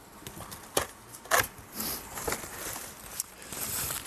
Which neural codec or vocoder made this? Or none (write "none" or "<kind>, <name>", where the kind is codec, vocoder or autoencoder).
none